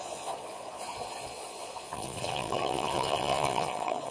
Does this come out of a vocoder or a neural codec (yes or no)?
yes